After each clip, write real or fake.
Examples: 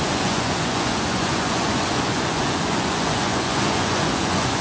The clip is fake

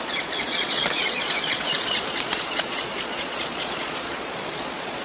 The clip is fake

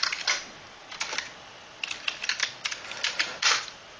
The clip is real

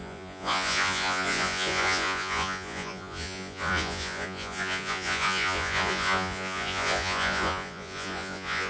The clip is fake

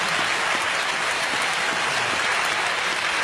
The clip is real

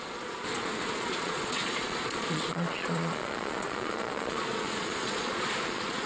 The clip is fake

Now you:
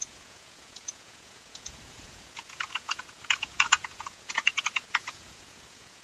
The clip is fake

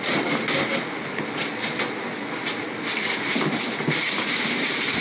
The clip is real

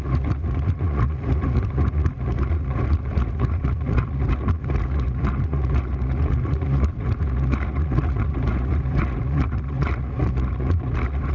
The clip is fake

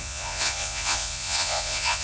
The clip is fake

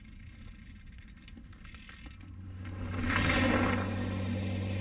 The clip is real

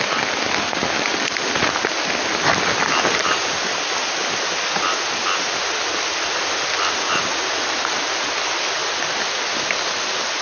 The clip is real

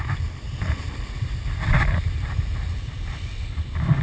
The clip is real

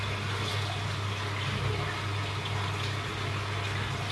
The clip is real